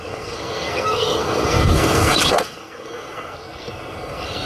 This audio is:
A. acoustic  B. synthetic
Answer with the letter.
B